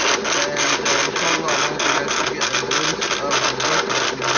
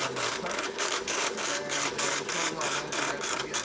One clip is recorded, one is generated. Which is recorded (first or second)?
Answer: first